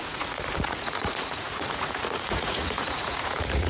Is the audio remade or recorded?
remade